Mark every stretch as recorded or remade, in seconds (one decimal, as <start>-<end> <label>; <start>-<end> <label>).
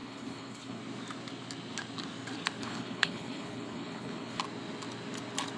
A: 0.0-0.8 remade; 0.8-2.6 recorded; 2.6-4.4 remade; 4.4-5.6 recorded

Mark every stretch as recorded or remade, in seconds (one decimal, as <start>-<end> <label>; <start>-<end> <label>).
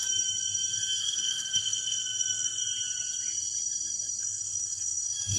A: 0.0-1.0 recorded; 1.0-2.6 remade; 2.6-4.2 recorded; 4.2-5.4 remade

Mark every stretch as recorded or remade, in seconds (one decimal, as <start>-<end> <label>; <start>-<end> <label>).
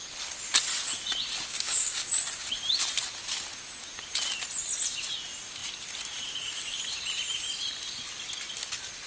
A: 0.0-1.5 recorded; 1.5-2.1 remade; 2.1-9.1 recorded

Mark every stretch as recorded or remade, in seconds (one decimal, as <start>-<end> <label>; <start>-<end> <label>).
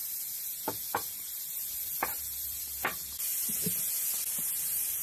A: 0.0-2.6 remade; 2.6-5.0 recorded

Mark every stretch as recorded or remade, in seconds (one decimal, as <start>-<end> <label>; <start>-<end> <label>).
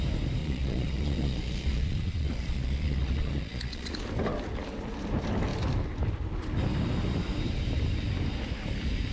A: 0.0-0.4 recorded; 0.4-3.9 remade; 3.9-9.1 recorded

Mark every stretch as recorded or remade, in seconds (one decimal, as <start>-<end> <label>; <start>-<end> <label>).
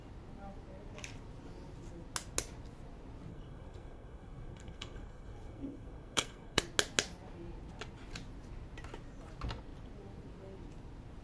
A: 0.0-3.3 recorded; 3.3-6.6 remade; 6.6-11.2 recorded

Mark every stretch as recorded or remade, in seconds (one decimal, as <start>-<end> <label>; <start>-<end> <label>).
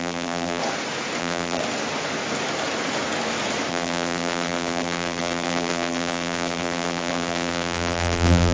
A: 0.0-0.6 remade; 0.6-1.2 recorded; 1.2-1.6 remade; 1.6-3.7 recorded; 3.7-8.5 remade